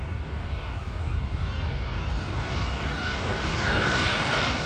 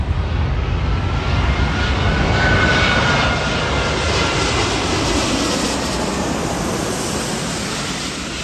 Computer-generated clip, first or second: first